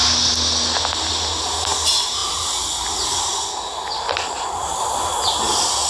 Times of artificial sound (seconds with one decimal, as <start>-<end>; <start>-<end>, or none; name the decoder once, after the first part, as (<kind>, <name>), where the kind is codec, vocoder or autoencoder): none